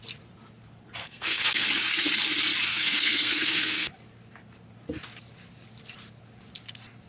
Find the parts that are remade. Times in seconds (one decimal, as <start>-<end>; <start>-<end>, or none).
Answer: 1.0-1.7; 2.7-3.9